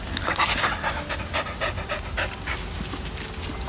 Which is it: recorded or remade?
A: recorded